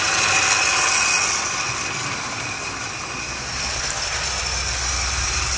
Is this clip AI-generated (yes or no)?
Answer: no